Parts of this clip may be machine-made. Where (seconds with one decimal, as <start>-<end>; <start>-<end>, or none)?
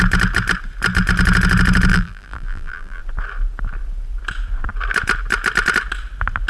1.9-3.0